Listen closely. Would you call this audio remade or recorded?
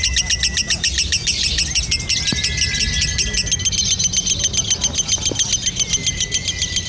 recorded